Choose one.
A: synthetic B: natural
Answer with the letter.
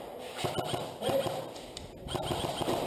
B